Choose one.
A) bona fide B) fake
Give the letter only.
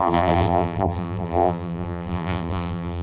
B